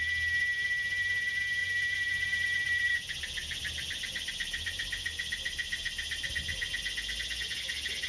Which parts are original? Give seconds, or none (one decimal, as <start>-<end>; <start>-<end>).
0.0-8.1